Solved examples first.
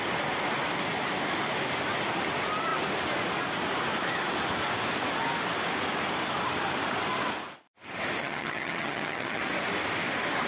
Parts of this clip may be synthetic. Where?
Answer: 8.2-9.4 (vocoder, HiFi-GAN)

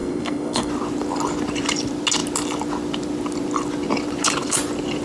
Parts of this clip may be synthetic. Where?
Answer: 0.0-0.7 (codec, SNAC)

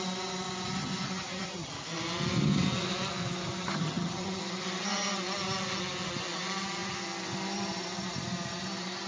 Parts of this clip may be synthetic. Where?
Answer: 0.8-1.7 (vocoder, HiFi-GAN); 3.6-4.4